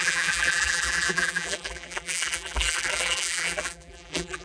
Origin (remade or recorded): remade